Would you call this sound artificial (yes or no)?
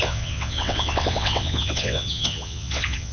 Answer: yes